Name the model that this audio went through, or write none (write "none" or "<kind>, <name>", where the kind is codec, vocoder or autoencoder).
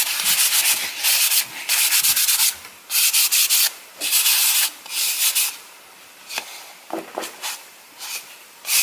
none